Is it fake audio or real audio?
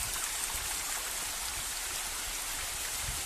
real